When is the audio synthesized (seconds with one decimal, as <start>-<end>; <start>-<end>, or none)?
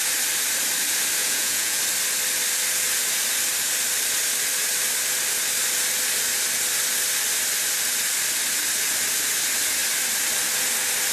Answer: 1.2-1.8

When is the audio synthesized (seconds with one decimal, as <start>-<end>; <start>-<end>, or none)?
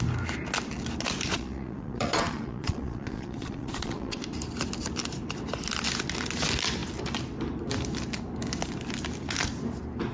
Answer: 1.3-4.2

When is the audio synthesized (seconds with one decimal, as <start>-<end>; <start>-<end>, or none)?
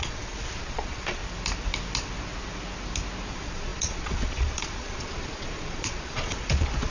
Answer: 0.0-1.2; 3.3-6.9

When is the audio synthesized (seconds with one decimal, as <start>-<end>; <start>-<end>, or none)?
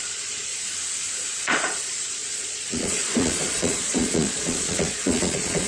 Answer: 0.0-0.5; 1.4-5.7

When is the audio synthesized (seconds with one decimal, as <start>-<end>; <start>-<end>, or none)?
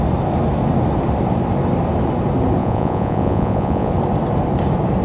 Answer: 2.6-3.9